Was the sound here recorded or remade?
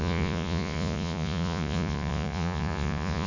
remade